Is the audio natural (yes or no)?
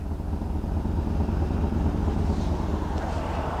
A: yes